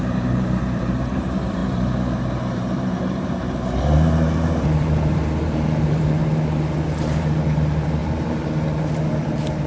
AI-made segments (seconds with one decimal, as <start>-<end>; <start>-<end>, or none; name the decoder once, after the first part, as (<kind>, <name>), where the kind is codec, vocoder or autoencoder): 0.0-9.7 (vocoder, BigVGAN v2)